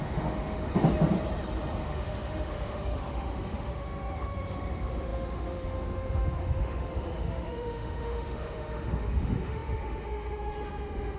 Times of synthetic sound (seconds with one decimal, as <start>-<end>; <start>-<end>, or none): 0.0-0.7; 1.8-11.2